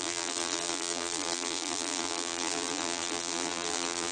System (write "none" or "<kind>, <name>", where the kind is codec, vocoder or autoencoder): vocoder, BigVGAN v2